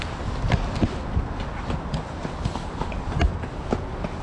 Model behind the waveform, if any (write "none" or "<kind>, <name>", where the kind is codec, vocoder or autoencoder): none